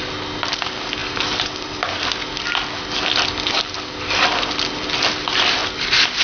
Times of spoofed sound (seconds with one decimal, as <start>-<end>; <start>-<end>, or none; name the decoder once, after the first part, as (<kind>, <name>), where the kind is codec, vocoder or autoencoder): none